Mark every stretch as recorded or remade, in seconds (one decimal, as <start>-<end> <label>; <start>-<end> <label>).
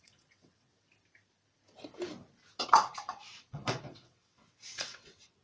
0.0-0.7 remade; 0.7-2.6 recorded; 2.6-5.4 remade